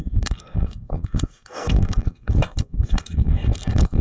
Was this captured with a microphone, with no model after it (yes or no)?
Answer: no